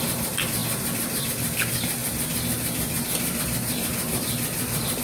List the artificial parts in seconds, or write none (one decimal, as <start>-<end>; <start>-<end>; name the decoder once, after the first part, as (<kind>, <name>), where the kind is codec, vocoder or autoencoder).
none